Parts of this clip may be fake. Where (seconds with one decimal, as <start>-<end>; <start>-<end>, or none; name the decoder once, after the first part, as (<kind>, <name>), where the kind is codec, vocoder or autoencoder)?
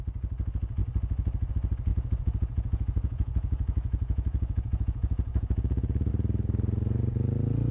1.9-6.1 (vocoder, Vocos)